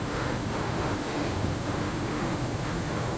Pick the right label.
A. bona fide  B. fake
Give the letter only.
B